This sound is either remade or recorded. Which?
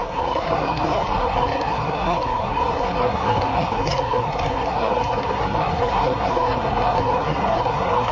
remade